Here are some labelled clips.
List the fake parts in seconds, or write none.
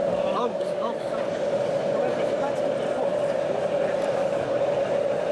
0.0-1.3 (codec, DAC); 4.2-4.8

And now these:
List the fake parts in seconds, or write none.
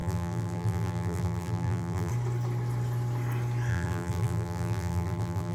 0.0-2.1 (vocoder, BigVGAN v2); 3.7-5.5